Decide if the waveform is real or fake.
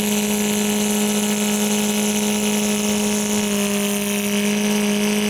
real